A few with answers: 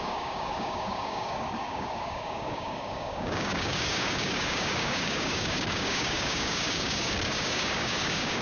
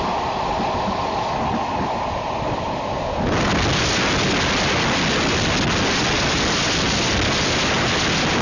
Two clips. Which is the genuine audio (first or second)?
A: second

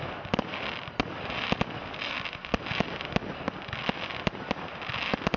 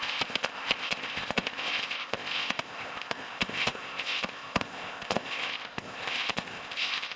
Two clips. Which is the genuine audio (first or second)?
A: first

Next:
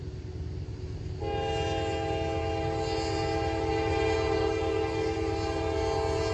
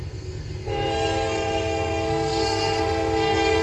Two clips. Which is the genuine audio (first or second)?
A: first